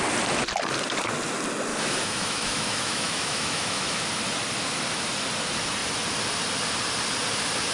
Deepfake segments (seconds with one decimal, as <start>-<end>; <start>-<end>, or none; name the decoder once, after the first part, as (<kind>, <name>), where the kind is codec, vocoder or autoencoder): 1.7-4.0 (autoencoder, DAC-VAE)